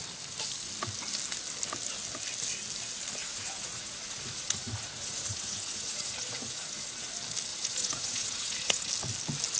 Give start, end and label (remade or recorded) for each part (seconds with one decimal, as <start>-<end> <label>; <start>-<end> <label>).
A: 0.0-3.2 recorded; 3.2-7.1 remade; 7.1-7.5 recorded; 7.5-8.9 remade; 8.9-9.6 recorded